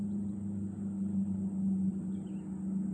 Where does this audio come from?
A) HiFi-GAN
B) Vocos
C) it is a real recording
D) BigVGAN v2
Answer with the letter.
C